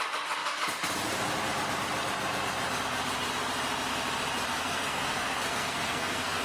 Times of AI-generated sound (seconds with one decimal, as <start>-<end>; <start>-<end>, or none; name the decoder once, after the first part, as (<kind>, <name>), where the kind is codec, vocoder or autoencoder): 4.5-6.4 (codec, SNAC)

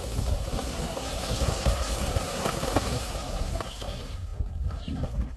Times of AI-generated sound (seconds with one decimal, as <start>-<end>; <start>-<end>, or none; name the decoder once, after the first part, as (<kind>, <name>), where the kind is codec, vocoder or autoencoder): 0.0-5.4 (codec, SNAC)